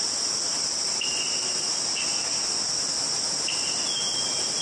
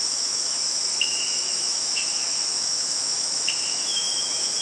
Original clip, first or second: first